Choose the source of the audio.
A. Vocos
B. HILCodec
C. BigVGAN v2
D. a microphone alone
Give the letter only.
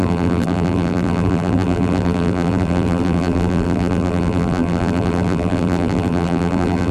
C